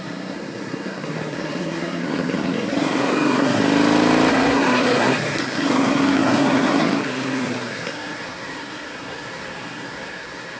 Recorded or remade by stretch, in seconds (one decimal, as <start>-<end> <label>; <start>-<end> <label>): 0.0-3.6 remade; 3.6-4.3 recorded; 4.3-10.6 remade